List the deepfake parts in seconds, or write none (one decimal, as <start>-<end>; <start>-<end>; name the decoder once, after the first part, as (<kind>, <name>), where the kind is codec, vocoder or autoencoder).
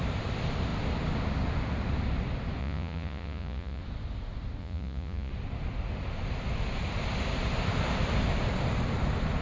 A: 2.6-3.8 (vocoder, Vocos); 4.6-5.3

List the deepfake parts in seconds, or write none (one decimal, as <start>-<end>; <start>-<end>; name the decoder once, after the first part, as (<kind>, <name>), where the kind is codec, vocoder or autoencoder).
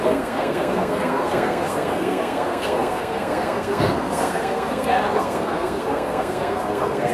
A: 0.0-7.1 (codec, SNAC)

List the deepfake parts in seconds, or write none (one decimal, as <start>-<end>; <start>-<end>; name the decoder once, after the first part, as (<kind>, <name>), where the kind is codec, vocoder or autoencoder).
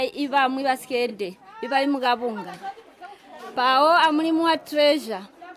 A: 1.1-3.4 (vocoder, BigVGAN v2)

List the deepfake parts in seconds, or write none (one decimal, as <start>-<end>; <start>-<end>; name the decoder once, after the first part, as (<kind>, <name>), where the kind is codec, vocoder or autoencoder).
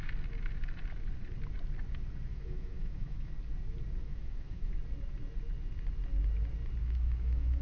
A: 2.3-3.3 (autoencoder, DAC-VAE); 4.0-4.7; 6.8-7.6